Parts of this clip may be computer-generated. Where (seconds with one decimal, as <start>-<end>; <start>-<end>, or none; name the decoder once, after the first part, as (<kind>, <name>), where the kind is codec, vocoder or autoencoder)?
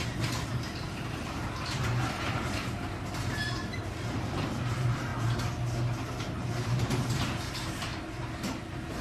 0.0-5.1 (vocoder, BigVGAN v2); 6.1-9.0